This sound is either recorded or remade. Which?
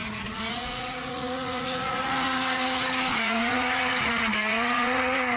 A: remade